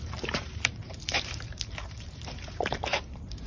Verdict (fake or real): fake